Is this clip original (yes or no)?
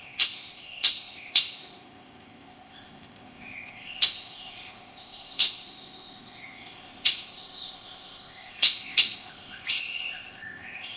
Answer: no